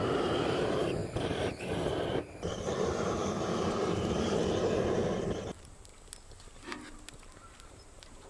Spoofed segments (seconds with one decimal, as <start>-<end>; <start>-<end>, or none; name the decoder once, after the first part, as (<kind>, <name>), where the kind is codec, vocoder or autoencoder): 0.0-1.0 (vocoder, BigVGAN v2); 1.6-5.9; 7.2-8.3